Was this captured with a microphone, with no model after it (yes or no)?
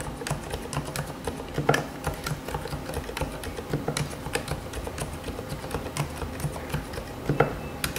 yes